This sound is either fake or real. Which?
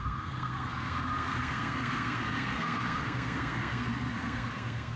fake